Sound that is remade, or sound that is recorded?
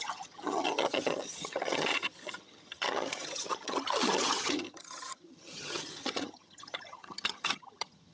remade